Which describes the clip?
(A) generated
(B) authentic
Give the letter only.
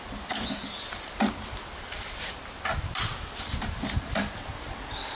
B